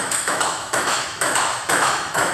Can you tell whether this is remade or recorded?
remade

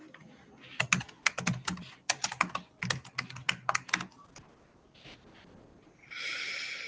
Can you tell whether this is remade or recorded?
recorded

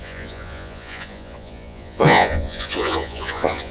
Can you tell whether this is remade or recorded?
remade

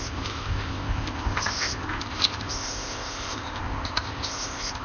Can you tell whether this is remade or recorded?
remade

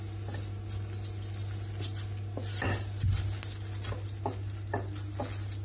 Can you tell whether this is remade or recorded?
recorded